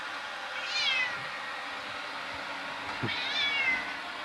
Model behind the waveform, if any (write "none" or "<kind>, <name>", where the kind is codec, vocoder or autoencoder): none